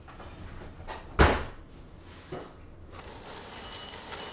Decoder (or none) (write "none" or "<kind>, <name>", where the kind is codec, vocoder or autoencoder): none